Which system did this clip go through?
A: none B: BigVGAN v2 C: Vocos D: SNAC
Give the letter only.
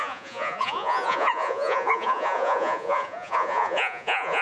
C